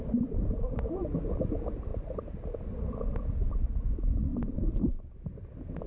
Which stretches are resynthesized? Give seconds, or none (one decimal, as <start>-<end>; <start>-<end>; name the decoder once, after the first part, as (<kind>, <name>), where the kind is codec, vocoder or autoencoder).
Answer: 0.0-1.5 (vocoder, BigVGAN v2); 1.9-2.6; 4.3-5.2